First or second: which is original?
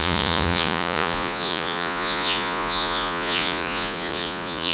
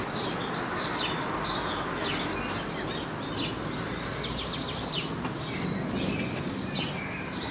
second